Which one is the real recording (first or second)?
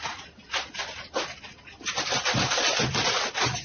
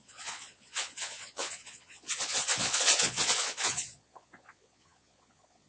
first